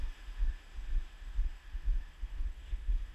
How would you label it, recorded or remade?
remade